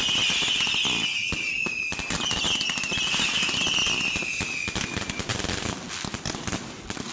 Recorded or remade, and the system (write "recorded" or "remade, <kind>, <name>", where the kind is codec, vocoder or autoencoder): recorded